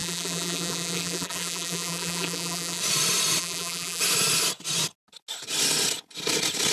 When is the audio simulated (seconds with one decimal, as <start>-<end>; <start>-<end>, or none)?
0.0-2.8; 3.4-4.0